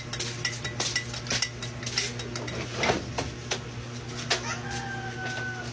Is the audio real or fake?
real